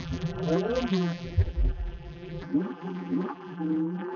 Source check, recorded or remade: remade